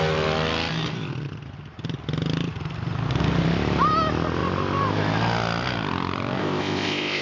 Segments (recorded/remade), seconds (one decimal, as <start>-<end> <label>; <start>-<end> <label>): 0.0-6.4 recorded; 6.4-7.2 remade

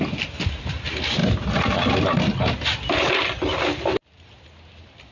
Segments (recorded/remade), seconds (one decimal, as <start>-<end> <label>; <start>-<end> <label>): 0.0-5.1 recorded

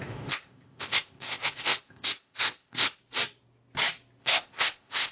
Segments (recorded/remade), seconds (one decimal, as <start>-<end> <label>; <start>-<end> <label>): 0.0-3.0 remade; 3.0-4.2 recorded; 4.2-5.1 remade

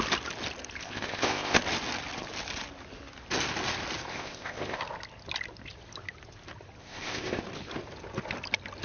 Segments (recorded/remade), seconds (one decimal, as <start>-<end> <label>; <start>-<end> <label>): 0.0-0.8 recorded; 0.8-1.6 remade; 1.6-4.1 recorded; 4.1-4.8 remade; 4.8-6.8 recorded; 6.8-7.4 remade; 7.4-8.8 recorded

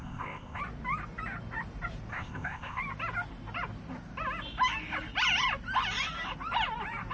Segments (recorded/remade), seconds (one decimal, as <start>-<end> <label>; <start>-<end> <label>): 0.0-0.6 remade; 0.6-2.1 recorded; 2.1-2.8 remade; 2.8-7.1 recorded

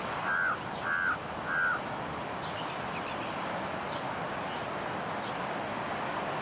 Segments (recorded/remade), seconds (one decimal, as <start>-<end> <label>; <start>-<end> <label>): 0.0-6.4 recorded

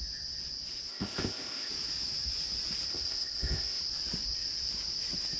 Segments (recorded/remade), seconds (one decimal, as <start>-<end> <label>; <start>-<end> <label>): 0.0-0.9 recorded; 0.9-1.7 remade; 1.7-2.9 recorded; 2.9-3.8 remade; 3.8-5.4 recorded

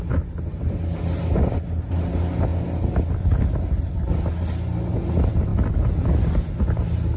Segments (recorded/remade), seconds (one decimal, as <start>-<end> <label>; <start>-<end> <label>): 0.0-7.2 recorded